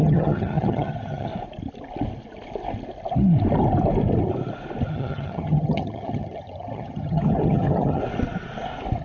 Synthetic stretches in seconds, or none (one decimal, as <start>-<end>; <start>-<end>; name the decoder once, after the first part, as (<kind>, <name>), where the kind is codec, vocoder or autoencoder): 0.0-1.3 (vocoder, HiFi-GAN); 4.9-8.0

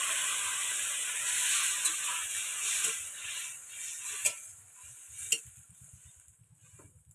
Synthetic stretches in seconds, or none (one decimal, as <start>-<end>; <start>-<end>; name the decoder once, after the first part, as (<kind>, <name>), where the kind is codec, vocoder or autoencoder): none

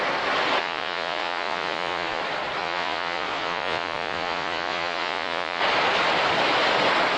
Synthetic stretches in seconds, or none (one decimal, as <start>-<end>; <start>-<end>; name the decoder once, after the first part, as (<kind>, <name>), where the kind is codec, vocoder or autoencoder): 0.6-2.2 (vocoder, Vocos); 2.6-5.6

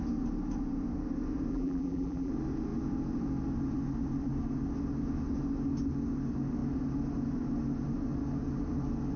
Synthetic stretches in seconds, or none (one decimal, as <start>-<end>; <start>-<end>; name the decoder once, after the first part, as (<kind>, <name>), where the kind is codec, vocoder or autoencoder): 1.5-2.3 (vocoder, BigVGAN v2)

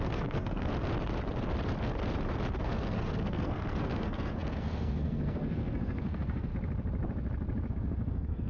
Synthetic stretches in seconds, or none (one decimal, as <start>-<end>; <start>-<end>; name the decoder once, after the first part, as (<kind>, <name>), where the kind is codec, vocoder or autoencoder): 0.0-0.7 (codec, SNAC); 2.6-6.5; 7.7-8.5

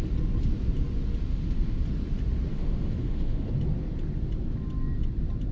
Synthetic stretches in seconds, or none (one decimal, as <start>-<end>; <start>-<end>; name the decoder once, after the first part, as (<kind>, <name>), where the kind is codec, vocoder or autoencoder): 1.3-1.8 (autoencoder, DAC-VAE); 2.5-3.5

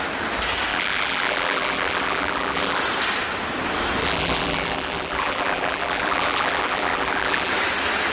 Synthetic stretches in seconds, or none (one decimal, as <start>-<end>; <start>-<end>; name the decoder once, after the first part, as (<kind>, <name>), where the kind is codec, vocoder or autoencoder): 0.7-2.8 (vocoder, BigVGAN v2); 4.0-7.5